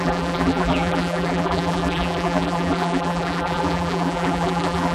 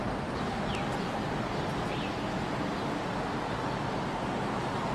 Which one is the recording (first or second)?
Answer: second